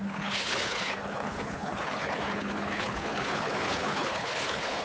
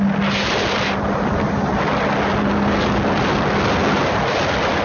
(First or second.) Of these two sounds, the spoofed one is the first